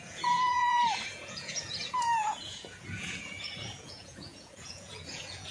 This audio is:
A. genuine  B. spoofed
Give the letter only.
B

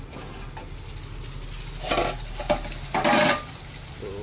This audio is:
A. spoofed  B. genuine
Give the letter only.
B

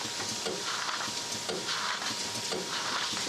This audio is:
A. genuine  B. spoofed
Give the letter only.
A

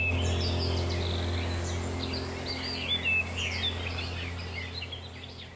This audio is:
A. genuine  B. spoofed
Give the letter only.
A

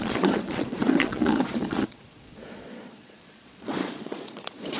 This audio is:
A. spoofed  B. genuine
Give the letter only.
A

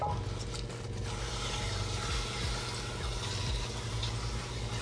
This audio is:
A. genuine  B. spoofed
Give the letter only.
A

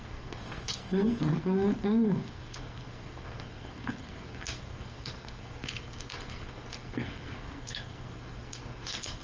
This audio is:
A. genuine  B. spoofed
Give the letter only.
B